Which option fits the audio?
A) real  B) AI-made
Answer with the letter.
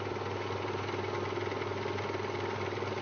A